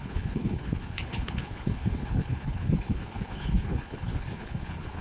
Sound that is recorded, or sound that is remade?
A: remade